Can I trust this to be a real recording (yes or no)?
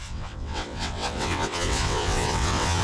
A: no